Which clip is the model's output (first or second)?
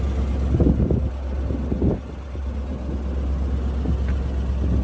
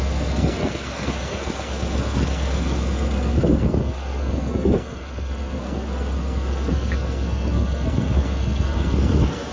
second